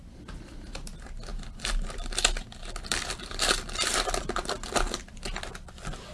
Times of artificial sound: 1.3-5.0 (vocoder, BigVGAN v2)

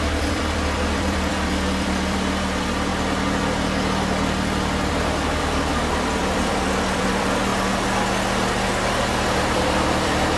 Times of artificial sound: 0.0-2.9 (vocoder, BigVGAN v2); 4.9-7.5; 9.4-10.4